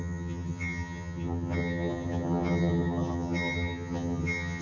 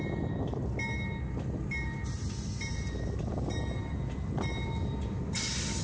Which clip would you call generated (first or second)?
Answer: first